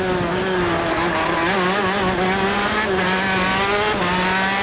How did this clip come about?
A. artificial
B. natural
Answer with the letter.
B